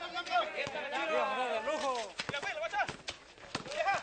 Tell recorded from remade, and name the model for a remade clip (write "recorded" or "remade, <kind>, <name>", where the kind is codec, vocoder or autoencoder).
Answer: recorded